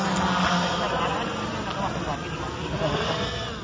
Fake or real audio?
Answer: real